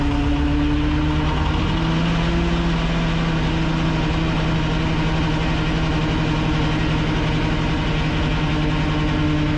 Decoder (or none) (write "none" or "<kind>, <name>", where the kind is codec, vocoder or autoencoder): none